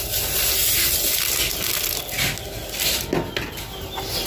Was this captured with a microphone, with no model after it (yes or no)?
yes